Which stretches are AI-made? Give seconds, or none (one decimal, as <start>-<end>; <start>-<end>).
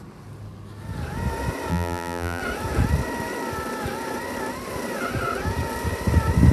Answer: 1.7-2.4